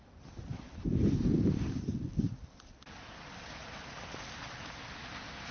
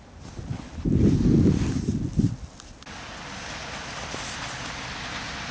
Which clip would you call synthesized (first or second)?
first